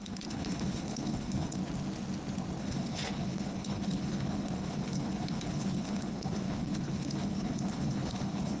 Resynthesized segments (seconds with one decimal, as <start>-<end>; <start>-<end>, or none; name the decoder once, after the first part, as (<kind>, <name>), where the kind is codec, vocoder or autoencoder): 0.0-1.6 (codec, HILCodec); 2.6-8.6